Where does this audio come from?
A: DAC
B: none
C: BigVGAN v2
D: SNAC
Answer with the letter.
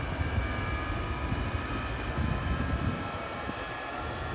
B